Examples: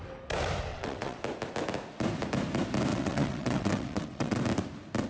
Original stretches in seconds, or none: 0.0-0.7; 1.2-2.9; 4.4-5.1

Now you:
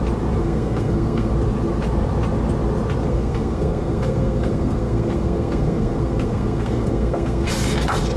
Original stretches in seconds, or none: 0.0-0.4; 1.3-3.1; 7.5-8.2

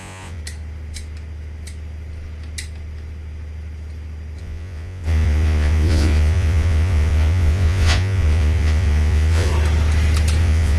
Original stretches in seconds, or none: 0.4-4.4; 9.5-10.4

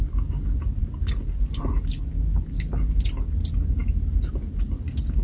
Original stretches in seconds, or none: 0.0-5.2

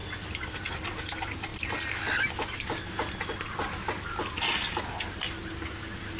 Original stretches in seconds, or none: 0.0-6.2

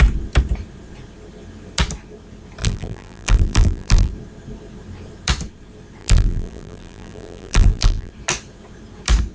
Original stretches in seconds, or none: 0.0-2.6; 4.1-6.0; 8.1-9.3

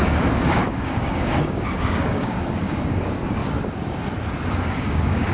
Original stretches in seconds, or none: 3.4-4.6